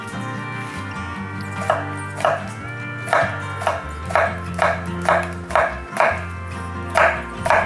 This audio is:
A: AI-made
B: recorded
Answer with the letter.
B